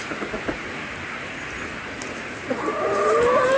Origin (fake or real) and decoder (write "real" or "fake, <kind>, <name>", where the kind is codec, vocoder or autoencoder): real